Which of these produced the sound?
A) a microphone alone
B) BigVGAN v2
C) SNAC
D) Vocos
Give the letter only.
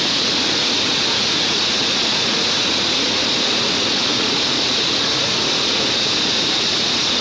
D